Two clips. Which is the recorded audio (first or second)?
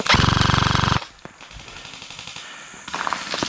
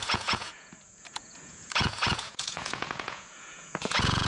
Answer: first